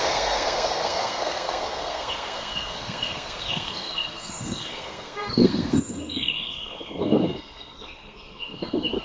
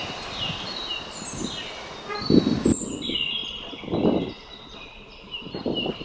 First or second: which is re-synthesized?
first